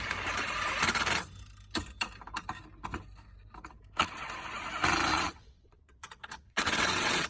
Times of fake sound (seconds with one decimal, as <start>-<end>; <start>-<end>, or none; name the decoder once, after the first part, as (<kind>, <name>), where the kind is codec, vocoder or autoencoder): 5.1-7.3 (vocoder, WaveNeXt)